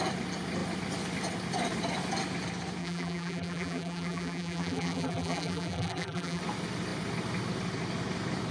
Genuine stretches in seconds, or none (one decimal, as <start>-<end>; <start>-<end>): 0.0-2.8; 6.4-8.5